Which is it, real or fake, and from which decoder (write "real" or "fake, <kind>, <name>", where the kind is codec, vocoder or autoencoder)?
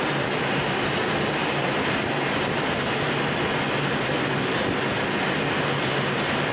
real